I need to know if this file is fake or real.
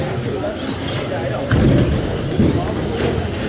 real